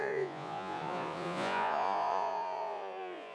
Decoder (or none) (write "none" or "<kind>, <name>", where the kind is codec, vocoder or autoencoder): vocoder, Vocos